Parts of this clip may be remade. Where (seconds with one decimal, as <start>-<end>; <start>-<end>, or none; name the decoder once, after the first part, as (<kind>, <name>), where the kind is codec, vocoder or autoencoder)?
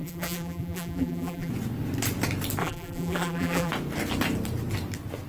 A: 0.0-1.5 (vocoder, BigVGAN v2); 2.6-3.7